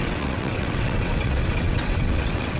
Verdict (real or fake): fake